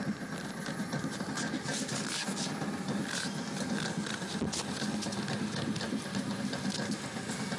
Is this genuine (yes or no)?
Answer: yes